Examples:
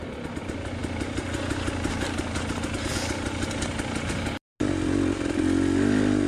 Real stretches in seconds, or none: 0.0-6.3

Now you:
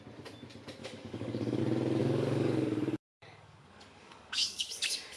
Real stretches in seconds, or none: 0.0-0.8; 1.6-2.0

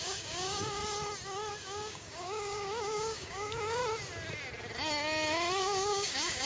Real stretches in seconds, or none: 0.8-1.5; 3.8-5.6

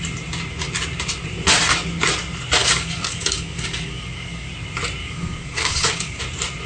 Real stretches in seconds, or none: 0.0-2.6; 4.5-5.0; 6.2-6.7

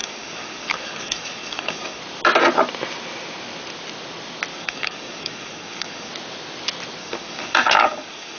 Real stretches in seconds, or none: 2.0-4.5; 6.1-7.0

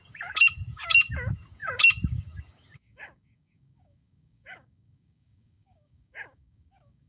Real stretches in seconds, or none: none